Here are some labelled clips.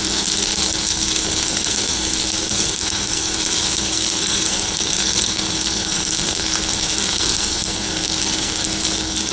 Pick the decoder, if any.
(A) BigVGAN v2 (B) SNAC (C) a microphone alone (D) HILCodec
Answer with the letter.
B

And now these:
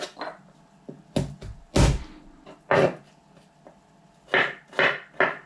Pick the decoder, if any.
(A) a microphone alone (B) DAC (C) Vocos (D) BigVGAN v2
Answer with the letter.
A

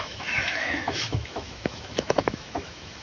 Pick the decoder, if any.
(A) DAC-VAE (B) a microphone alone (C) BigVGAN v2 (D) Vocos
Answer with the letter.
A